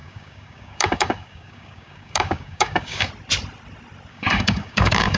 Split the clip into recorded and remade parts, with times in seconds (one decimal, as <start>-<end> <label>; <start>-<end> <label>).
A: 0.0-3.1 remade; 3.1-4.1 recorded; 4.1-5.2 remade